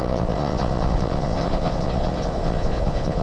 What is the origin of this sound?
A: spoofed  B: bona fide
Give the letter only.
A